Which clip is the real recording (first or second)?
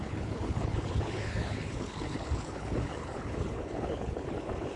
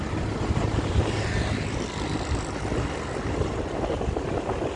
second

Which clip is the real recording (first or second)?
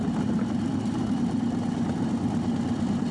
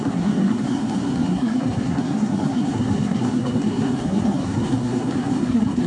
first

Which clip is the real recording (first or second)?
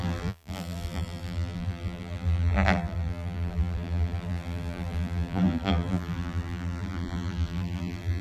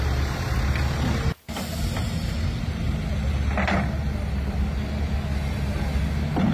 second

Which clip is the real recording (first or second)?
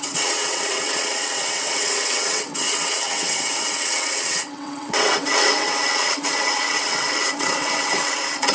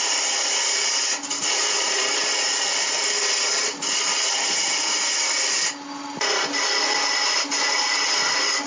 second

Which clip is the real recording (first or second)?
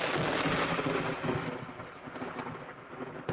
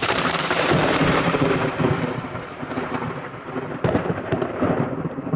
first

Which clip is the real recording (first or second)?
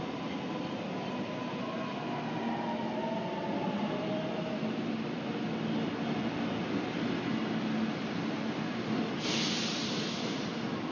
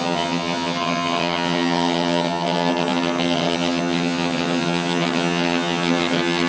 first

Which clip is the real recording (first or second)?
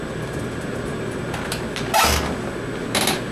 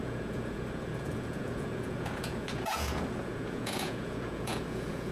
first